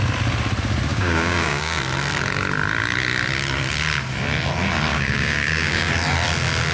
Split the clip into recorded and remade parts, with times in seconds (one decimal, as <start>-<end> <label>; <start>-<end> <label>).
0.0-0.9 recorded; 0.9-1.8 remade; 1.8-4.9 recorded; 4.9-5.9 remade; 5.9-6.7 recorded